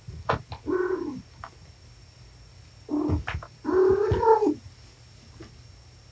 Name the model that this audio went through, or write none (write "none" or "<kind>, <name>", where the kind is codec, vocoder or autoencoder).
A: none